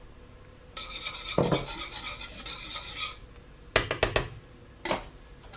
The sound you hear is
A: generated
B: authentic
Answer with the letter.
B